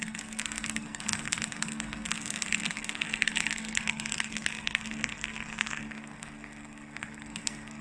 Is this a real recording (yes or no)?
no